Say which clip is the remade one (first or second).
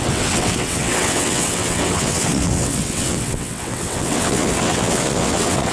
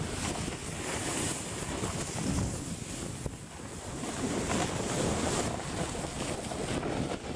first